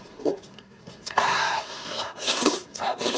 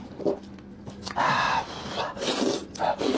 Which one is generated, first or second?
first